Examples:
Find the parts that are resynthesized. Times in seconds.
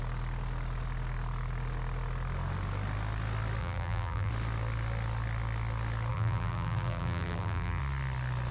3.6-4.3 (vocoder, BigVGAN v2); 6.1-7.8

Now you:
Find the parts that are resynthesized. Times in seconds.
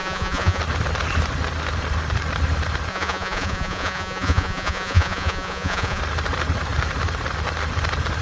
0.0-0.6 (vocoder, Vocos); 2.9-6.0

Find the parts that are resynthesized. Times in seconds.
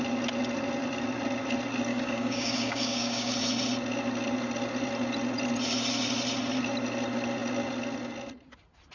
1.9-3.3 (codec, DAC)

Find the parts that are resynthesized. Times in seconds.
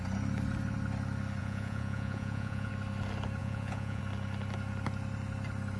1.4-2.7 (vocoder, Vocos); 3.4-4.0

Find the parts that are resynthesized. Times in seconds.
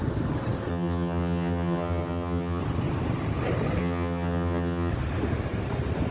0.7-2.6 (vocoder, HiFi-GAN); 3.8-4.9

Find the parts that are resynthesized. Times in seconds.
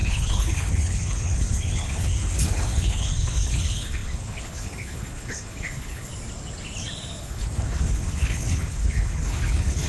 0.0-6.1 (codec, HILCodec); 7.2-9.9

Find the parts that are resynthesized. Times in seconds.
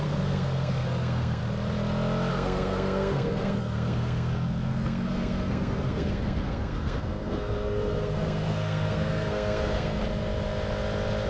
0.0-1.4 (codec, SNAC); 2.3-10.0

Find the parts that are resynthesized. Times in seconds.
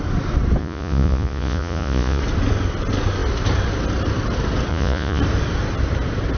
0.6-2.2 (vocoder, Vocos); 4.7-5.2